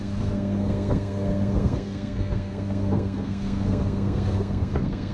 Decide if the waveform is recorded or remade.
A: remade